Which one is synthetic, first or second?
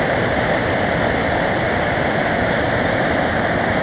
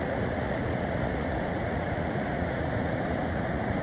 second